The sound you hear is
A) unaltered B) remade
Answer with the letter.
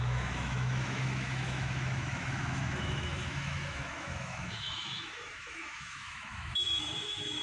B